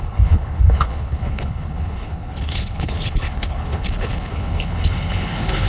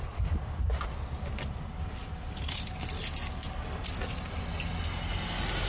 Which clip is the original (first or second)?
second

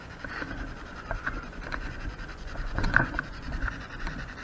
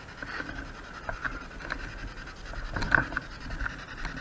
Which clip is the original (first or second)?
second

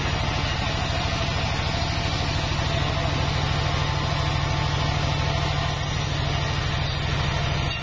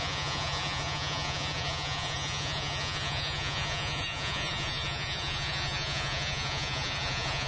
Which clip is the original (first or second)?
first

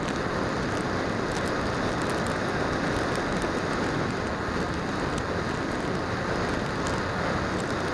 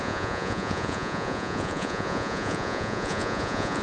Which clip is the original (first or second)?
first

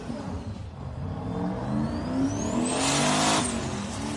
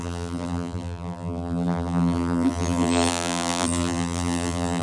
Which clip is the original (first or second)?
first